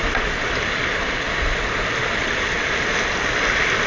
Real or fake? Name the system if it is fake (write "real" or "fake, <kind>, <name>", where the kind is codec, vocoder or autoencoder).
real